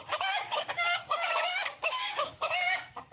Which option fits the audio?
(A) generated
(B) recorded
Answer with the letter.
A